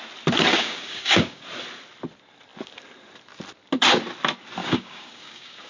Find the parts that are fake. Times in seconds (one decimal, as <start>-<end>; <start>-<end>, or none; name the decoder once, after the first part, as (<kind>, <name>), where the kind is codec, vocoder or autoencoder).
0.5-1.4 (codec, DAC); 4.6-5.7